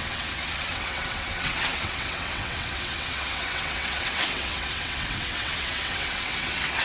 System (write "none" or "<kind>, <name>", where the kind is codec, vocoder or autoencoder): vocoder, WaveNeXt